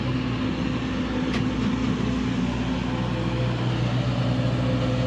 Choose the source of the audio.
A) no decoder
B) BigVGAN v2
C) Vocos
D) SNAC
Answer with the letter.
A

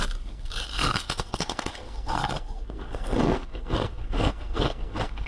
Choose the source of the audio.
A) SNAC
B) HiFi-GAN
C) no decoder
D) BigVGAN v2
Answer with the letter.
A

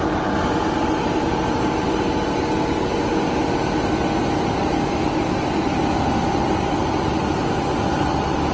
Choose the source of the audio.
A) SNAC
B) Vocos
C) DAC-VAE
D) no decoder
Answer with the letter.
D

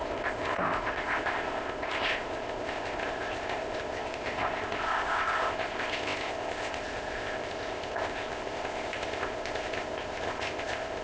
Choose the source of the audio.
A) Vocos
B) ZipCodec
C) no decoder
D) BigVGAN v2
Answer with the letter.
B